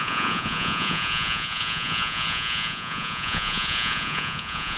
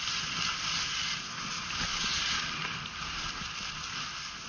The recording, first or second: second